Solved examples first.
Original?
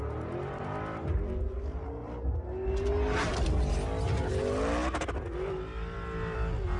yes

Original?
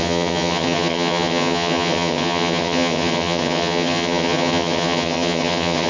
no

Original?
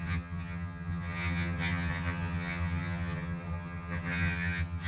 no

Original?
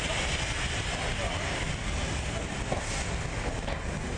yes